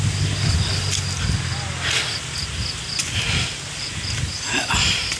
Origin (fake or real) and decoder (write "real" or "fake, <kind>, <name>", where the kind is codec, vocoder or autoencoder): real